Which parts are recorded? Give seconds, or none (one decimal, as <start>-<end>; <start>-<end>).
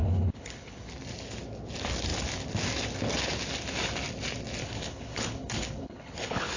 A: 0.9-4.6